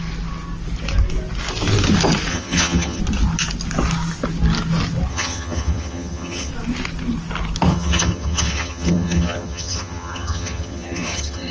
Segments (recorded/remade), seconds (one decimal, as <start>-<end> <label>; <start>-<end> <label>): 0.0-2.3 recorded; 2.3-3.0 remade; 3.0-5.1 recorded; 5.1-6.5 remade; 6.5-7.7 recorded; 7.7-11.5 remade